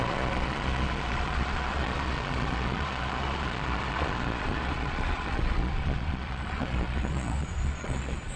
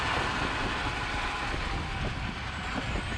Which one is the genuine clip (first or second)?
second